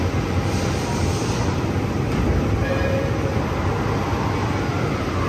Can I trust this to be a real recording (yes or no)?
yes